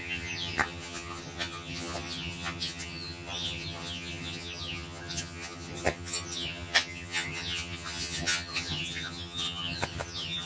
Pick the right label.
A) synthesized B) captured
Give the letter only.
A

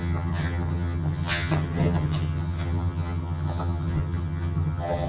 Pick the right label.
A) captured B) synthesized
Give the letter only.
B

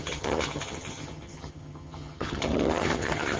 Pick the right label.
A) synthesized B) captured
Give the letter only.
A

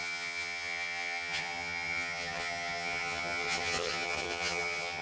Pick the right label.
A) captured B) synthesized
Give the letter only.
B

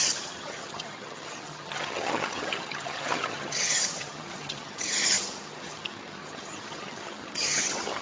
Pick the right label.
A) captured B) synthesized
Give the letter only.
B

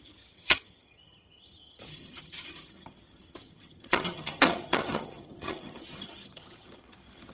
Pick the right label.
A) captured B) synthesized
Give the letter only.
B